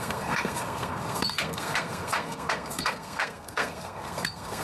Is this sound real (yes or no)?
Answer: no